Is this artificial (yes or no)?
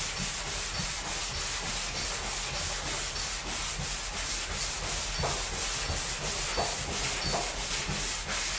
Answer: no